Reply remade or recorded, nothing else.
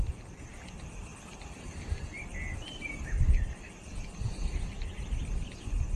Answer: recorded